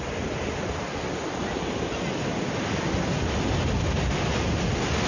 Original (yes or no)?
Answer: yes